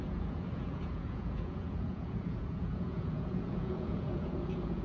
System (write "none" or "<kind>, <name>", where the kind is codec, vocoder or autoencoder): vocoder, Vocos